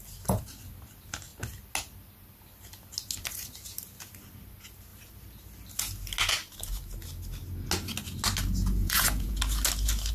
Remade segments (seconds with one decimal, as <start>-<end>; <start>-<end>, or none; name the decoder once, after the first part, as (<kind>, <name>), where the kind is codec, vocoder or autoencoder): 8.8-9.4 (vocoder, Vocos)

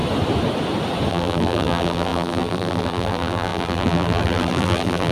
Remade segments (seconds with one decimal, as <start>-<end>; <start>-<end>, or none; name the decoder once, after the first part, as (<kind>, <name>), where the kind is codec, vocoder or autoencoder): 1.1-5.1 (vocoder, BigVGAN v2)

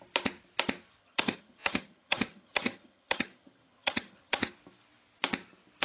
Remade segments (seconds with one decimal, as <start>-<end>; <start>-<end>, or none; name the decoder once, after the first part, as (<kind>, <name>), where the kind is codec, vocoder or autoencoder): 1.0-4.5 (vocoder, HiFi-GAN)

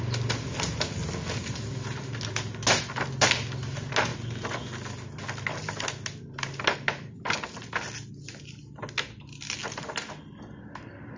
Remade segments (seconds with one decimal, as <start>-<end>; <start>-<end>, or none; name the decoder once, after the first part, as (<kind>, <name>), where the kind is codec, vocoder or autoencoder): none

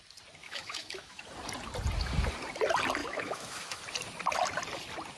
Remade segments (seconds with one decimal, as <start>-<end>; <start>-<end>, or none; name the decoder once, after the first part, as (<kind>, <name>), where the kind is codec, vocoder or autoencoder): 0.4-1.2 (autoencoder, DAC-VAE); 3.0-3.8

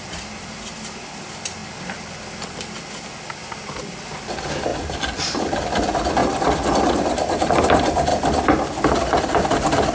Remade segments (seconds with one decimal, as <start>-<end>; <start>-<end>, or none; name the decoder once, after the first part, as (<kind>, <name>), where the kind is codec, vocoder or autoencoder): none

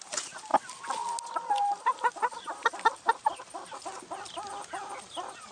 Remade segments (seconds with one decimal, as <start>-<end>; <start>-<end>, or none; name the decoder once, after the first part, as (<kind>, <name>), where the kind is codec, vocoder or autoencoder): none

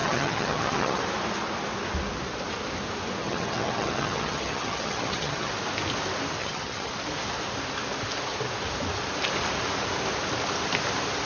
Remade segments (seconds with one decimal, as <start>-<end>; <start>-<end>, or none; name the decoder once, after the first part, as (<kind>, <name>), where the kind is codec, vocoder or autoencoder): 0.0-1.0 (vocoder, HiFi-GAN); 3.2-5.5; 6.4-6.9